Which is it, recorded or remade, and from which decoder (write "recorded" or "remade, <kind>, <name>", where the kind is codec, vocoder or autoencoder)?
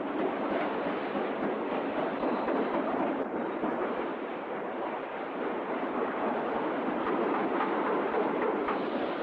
recorded